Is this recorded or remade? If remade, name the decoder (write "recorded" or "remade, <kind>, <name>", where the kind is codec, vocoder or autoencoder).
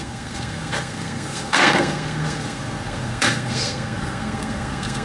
remade, codec, SNAC